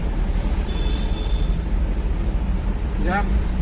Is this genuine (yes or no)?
yes